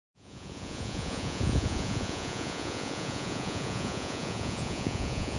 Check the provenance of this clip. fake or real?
fake